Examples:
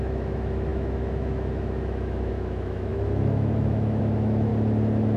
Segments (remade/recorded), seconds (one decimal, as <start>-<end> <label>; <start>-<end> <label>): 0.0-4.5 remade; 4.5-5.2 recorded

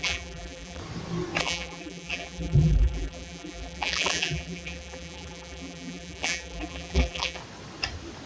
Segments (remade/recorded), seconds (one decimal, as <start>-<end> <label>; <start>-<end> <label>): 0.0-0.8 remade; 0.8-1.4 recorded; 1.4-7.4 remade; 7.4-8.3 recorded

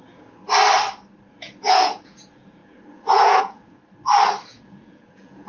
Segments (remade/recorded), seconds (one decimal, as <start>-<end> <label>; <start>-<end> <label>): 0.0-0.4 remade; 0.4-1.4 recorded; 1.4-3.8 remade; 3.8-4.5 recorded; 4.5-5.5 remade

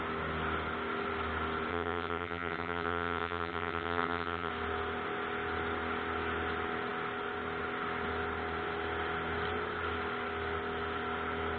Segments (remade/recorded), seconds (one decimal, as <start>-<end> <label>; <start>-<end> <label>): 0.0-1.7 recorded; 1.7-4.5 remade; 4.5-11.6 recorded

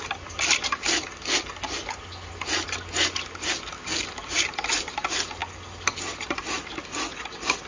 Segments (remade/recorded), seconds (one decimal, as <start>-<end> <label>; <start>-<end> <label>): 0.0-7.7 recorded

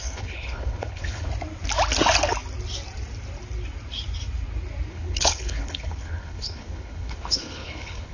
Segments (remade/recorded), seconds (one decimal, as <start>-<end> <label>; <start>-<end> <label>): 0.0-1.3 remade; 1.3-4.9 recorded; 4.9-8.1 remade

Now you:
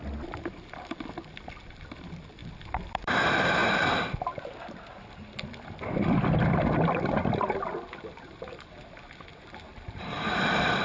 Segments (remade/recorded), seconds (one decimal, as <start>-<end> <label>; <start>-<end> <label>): 0.0-9.7 recorded; 9.7-10.8 remade

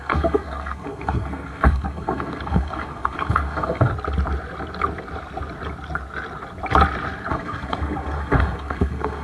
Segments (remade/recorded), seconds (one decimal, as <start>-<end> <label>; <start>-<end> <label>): 0.0-3.9 remade; 3.9-7.3 recorded; 7.3-9.2 remade